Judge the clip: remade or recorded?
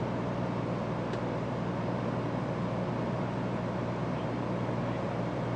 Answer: recorded